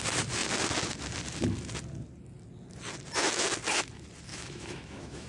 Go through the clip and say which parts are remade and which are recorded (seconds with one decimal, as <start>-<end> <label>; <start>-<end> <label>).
0.0-4.3 recorded; 4.3-5.3 remade